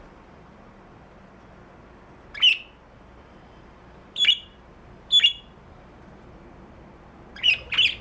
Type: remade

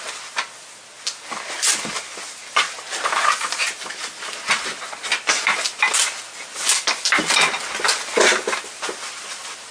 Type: recorded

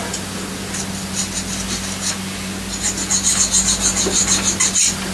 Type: recorded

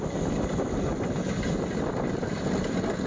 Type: recorded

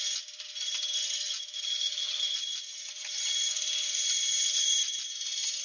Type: recorded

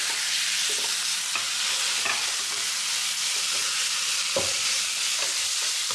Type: recorded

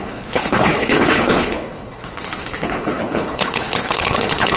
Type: remade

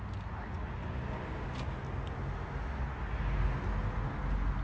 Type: recorded